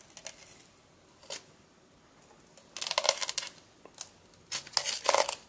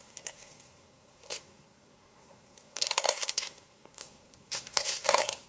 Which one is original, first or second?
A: first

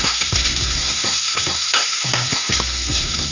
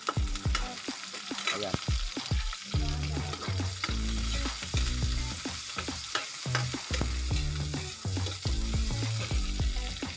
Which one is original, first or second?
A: second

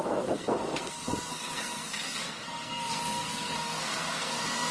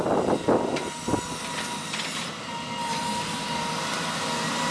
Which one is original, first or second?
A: second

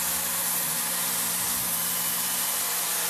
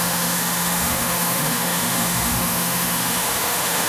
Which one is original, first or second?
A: first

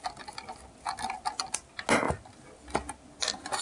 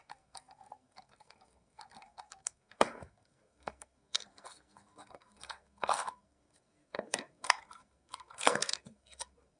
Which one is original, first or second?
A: first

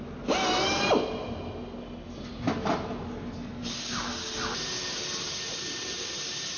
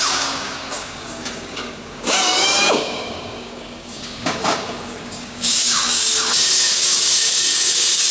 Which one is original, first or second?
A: first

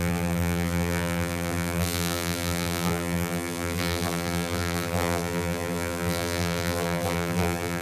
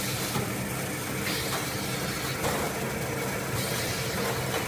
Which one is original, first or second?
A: second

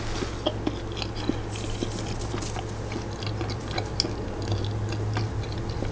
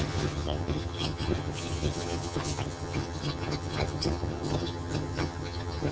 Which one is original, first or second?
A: first